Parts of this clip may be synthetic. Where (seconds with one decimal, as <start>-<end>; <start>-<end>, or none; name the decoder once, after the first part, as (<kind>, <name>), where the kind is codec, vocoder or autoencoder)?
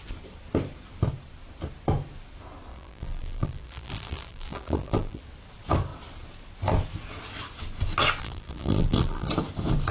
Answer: 2.7-5.2 (vocoder, BigVGAN v2); 8.2-9.3